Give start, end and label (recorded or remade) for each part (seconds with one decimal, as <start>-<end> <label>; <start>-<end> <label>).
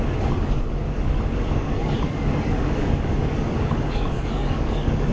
0.0-5.1 remade